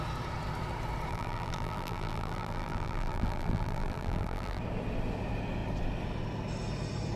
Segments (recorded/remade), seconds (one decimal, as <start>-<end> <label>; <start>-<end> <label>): 0.0-1.1 recorded; 1.1-4.6 remade; 4.6-7.2 recorded